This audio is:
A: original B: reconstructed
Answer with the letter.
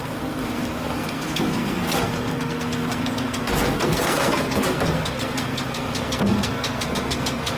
B